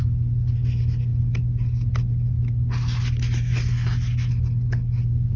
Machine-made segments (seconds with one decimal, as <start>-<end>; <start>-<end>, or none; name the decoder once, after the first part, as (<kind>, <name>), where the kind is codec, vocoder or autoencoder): none